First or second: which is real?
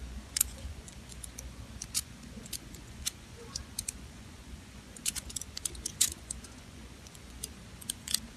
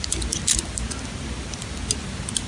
second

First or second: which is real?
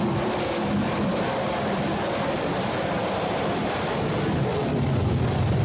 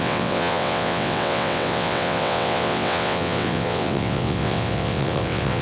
first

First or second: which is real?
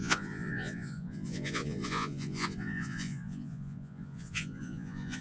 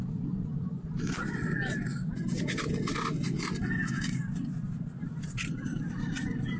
second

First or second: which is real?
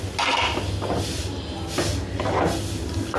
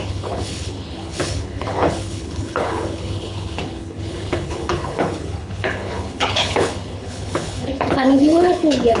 first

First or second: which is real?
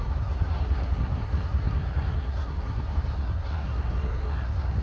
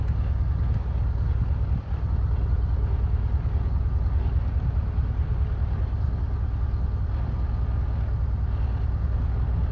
second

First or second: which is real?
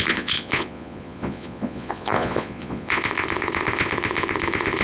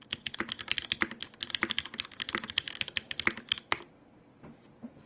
second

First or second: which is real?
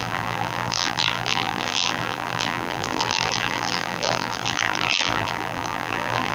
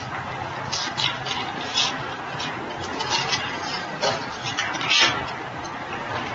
second